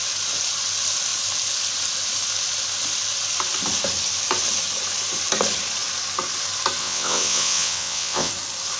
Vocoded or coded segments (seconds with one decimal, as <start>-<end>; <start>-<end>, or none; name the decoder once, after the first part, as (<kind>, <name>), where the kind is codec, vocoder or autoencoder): 6.8-8.3 (vocoder, WaveNeXt)